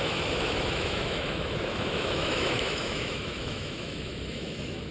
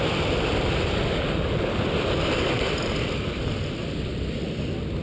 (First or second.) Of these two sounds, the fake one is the first